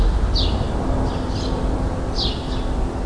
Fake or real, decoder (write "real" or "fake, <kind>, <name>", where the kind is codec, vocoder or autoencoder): real